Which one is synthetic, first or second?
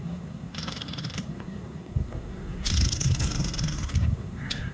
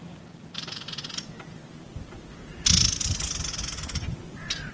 first